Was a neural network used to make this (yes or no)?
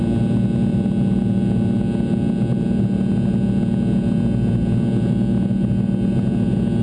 no